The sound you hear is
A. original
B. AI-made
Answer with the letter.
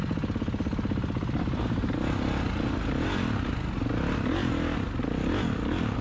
A